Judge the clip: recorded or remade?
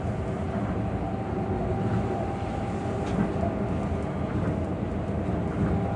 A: recorded